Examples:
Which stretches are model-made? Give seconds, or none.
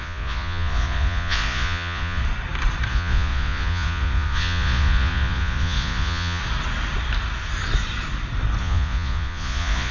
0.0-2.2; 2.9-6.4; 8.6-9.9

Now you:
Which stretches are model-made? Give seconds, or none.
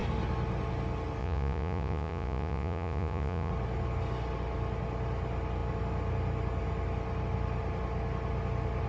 1.2-3.5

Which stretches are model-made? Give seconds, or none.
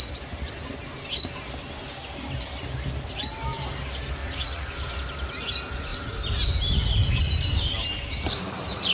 4.2-4.7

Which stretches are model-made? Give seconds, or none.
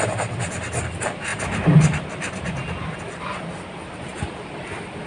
none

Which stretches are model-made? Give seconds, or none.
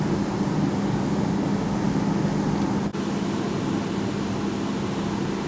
none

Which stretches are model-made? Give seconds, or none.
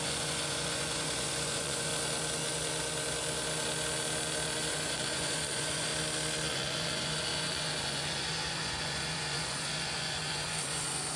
0.0-1.9; 4.7-5.9; 6.5-11.2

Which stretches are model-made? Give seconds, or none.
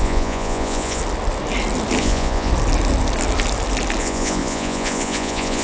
0.0-1.0; 2.0-2.5; 4.0-5.6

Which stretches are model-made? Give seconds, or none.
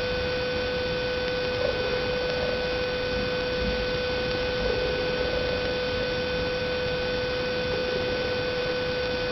none